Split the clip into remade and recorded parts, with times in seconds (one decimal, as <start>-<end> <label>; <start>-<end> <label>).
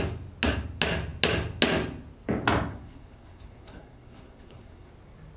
0.0-2.7 recorded; 2.7-4.9 remade; 4.9-5.4 recorded